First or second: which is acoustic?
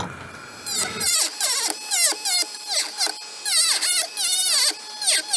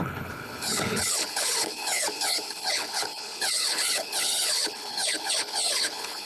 first